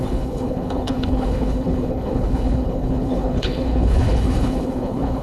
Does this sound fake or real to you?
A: fake